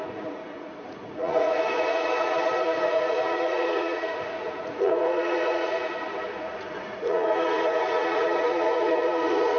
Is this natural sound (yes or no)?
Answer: no